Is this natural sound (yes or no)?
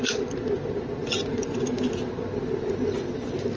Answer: yes